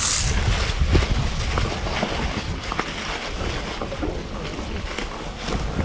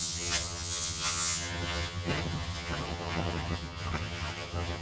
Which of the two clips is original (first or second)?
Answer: first